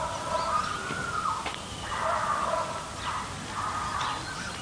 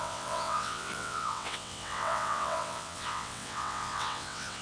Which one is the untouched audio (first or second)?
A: first